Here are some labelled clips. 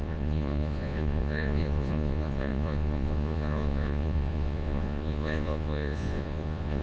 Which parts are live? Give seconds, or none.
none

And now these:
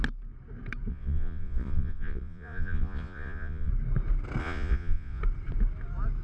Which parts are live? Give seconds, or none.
0.0-0.9; 3.7-4.4; 5.2-6.2